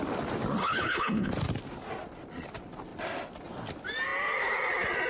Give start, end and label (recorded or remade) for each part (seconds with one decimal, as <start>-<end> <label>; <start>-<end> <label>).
0.0-0.6 recorded; 0.6-1.3 remade; 1.3-5.1 recorded